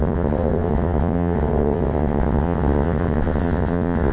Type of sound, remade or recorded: remade